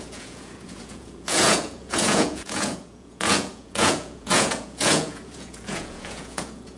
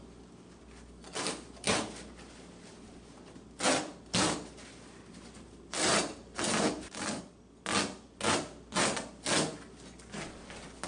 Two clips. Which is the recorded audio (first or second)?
second